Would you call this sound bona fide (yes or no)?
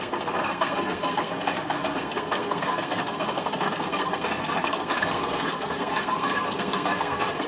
no